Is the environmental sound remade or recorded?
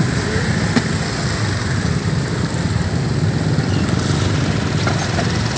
recorded